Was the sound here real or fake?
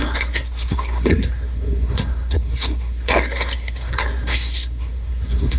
fake